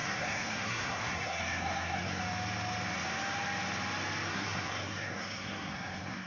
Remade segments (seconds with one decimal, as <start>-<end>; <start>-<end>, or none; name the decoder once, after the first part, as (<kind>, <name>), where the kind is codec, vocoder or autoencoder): 0.0-2.2 (codec, SNAC); 4.3-6.3